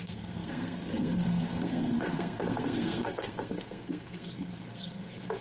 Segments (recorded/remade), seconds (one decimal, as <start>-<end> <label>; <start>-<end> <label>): 0.0-5.4 remade